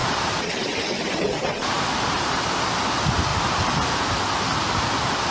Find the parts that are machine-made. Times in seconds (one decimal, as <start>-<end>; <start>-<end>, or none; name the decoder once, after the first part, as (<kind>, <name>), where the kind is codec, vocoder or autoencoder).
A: 0.0-2.4 (vocoder, BigVGAN v2); 3.3-4.0